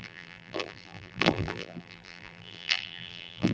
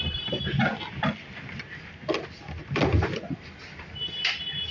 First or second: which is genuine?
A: second